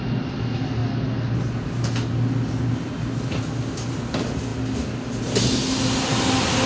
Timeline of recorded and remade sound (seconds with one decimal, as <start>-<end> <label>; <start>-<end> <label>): 0.0-6.7 recorded